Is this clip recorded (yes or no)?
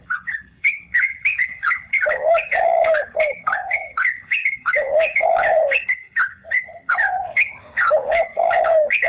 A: no